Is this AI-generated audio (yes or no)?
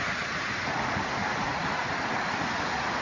yes